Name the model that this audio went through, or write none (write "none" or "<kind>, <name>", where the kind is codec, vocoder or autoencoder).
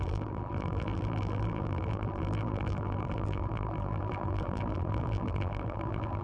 vocoder, BigVGAN v2